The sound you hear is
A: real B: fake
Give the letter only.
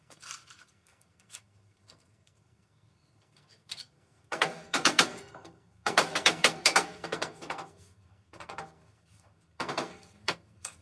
B